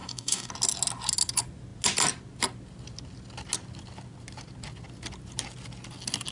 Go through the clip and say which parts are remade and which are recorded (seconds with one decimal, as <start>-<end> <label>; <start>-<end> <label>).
0.0-0.5 remade; 0.5-6.3 recorded